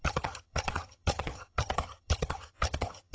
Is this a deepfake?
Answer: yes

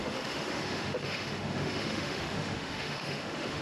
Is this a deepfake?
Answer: yes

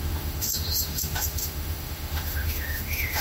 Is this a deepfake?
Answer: yes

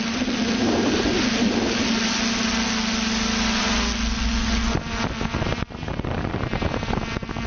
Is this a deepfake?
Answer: no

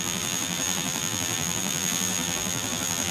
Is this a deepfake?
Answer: yes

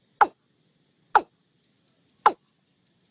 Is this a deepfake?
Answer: no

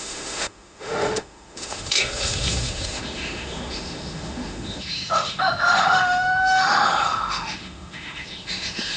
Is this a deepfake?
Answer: yes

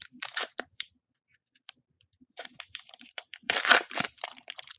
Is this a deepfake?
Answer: yes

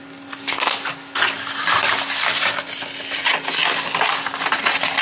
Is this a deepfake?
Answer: no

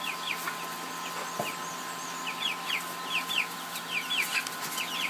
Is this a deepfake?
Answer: no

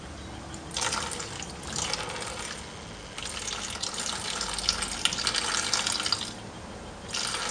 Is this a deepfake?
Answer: no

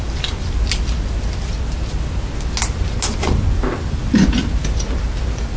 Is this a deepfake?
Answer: no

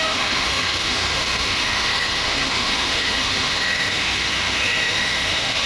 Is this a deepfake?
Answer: yes